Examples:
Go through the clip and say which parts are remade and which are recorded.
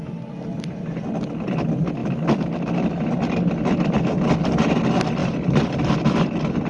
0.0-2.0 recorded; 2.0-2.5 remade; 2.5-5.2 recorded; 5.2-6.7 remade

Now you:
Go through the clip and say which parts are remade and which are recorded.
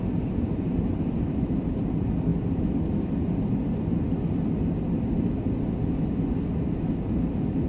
0.0-2.3 remade; 2.3-6.9 recorded; 6.9-7.7 remade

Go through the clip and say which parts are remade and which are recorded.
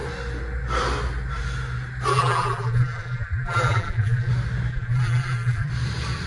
0.0-2.1 recorded; 2.1-4.3 remade; 4.3-4.7 recorded; 4.7-5.7 remade; 5.7-6.3 recorded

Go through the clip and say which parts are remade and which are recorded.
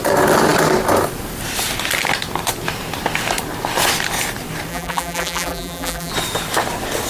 0.0-4.7 recorded; 4.7-6.1 remade; 6.1-7.1 recorded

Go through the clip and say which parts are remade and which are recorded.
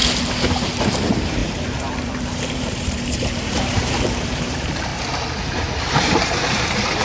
0.0-0.8 recorded; 0.8-1.4 remade; 1.4-1.9 recorded; 1.9-4.9 remade; 4.9-6.0 recorded; 6.0-7.0 remade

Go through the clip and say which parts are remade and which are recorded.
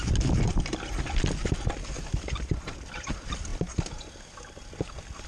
0.0-5.3 recorded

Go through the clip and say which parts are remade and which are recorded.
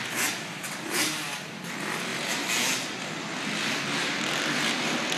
0.0-5.2 recorded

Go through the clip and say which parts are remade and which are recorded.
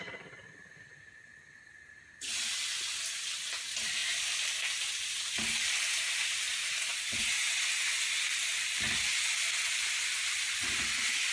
0.0-4.0 recorded; 4.0-4.5 remade; 4.5-11.3 recorded